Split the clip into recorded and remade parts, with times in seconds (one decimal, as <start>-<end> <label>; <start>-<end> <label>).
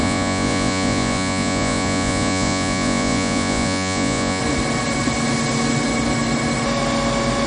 0.0-4.4 remade; 4.4-7.5 recorded